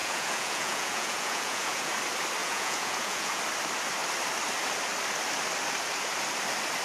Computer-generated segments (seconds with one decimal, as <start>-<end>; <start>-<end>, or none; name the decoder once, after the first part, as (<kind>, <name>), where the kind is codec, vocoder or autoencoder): 0.0-1.9 (vocoder, Vocos); 2.4-3.4